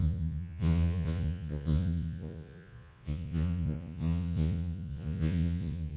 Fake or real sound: fake